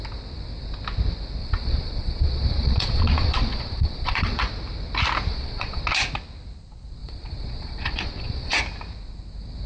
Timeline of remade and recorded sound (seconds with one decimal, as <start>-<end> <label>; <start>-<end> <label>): 0.0-1.4 recorded; 1.4-4.4 remade; 4.4-5.3 recorded; 5.3-5.8 remade; 5.8-7.0 recorded; 7.0-8.6 remade; 8.6-9.7 recorded

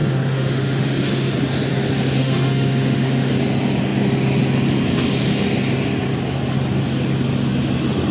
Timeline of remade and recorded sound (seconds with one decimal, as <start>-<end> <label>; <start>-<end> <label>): 0.0-1.3 remade; 1.3-2.2 recorded; 2.2-3.3 remade; 3.3-8.1 recorded